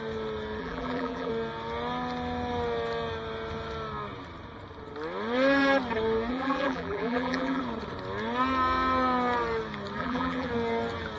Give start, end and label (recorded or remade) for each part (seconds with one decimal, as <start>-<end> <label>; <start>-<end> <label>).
0.0-0.6 recorded; 0.6-1.3 remade; 1.3-6.3 recorded; 6.3-7.6 remade; 7.6-10.0 recorded; 10.0-10.5 remade; 10.5-11.2 recorded